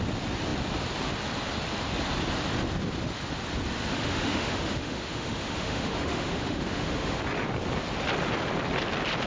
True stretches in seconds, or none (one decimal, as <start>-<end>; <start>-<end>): 0.0-3.9; 7.2-9.3